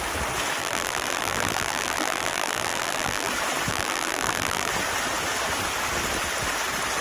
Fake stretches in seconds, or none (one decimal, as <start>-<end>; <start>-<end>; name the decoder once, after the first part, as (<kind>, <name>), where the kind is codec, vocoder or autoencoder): 0.6-3.3 (vocoder, BigVGAN v2); 3.7-4.7